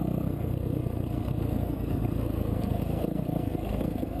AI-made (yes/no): yes